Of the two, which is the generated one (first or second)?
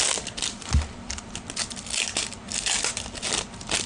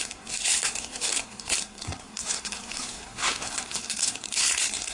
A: second